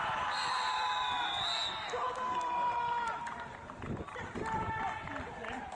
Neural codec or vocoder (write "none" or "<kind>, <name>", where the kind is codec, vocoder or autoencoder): vocoder, BigVGAN v2